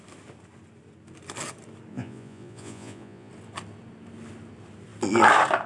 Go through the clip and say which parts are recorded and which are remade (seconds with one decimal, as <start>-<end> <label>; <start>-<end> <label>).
0.0-1.9 recorded; 1.9-3.3 remade; 3.3-5.7 recorded